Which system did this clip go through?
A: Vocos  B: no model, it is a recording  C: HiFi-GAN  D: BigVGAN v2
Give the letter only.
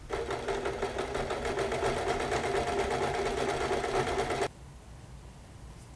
B